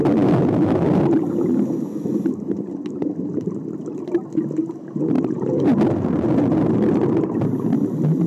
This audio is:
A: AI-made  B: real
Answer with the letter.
B